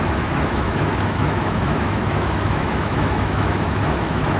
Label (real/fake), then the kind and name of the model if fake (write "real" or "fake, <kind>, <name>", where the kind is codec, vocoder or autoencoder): fake, autoencoder, DAC-VAE